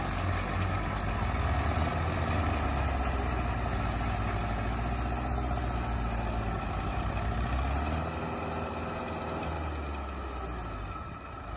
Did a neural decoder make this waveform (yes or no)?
no